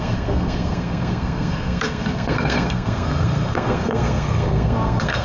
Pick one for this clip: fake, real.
fake